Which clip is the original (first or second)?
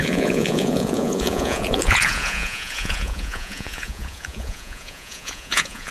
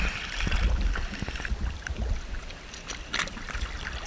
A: second